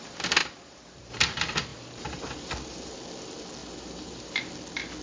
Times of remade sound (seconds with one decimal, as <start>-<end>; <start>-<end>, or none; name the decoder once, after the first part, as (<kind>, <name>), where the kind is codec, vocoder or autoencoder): 0.4-1.1 (vocoder, BigVGAN v2); 1.7-2.9; 3.6-4.5